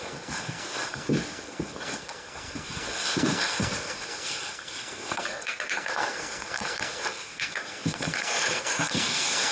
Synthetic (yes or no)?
yes